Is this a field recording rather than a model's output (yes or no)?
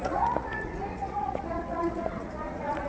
no